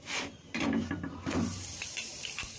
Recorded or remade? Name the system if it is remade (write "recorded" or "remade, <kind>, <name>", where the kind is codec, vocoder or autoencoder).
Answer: remade, vocoder, BigVGAN v2